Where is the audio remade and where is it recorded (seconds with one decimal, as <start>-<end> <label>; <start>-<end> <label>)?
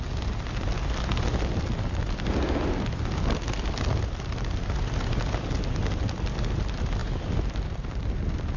0.0-8.6 recorded